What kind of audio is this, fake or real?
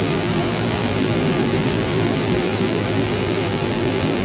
fake